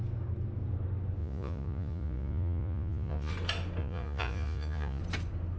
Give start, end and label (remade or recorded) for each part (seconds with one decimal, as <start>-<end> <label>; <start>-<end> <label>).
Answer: 0.0-1.2 recorded; 1.2-3.3 remade; 3.3-3.8 recorded; 3.8-5.0 remade; 5.0-5.6 recorded